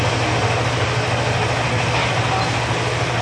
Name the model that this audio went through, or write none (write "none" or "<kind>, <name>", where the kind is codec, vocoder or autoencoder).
none